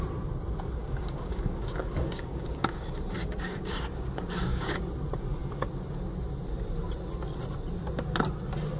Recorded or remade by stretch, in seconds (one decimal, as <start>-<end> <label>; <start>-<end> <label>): 0.0-0.8 recorded; 0.8-4.8 remade; 4.8-8.8 recorded

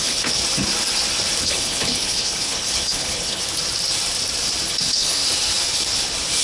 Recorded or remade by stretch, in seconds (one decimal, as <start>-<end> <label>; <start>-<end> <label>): 0.0-0.4 remade; 0.4-1.4 recorded; 1.4-3.4 remade; 3.4-4.7 recorded; 4.7-5.2 remade; 5.2-6.4 recorded

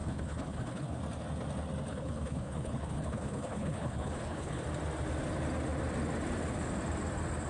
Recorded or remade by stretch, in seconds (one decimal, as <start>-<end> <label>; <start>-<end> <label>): 0.0-1.0 remade; 1.0-1.9 recorded; 1.9-4.6 remade; 4.6-7.5 recorded

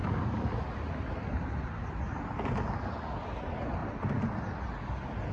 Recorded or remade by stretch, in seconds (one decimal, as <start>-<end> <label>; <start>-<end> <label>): 0.0-0.5 remade; 0.5-5.3 recorded